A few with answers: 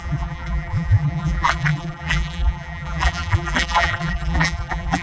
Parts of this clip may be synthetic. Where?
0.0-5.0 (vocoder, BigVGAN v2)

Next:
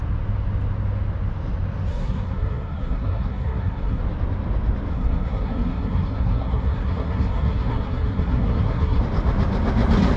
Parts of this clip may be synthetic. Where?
1.9-4.0 (codec, SNAC); 4.9-9.0

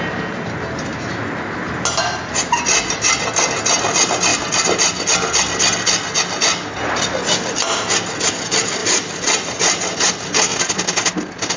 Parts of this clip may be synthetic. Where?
8.8-10.1 (vocoder, BigVGAN v2)

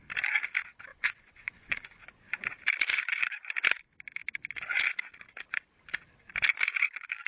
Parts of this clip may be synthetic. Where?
0.9-2.3 (vocoder, Vocos)

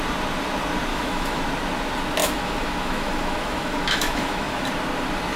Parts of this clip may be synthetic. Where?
0.9-1.4 (autoencoder, DAC-VAE); 2.2-4.6